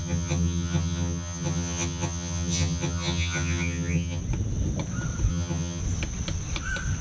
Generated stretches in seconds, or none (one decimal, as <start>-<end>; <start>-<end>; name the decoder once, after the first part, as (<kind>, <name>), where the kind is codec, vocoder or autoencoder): 0.0-4.2 (vocoder, HiFi-GAN); 5.3-5.8